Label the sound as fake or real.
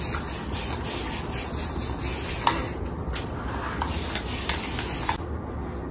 real